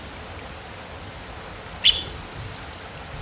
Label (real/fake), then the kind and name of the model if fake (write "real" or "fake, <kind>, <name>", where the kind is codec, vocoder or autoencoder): real